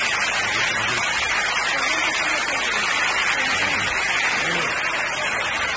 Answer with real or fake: real